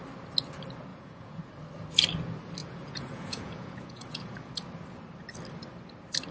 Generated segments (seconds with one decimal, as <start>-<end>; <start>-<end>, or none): 0.9-1.4; 2.6-4.5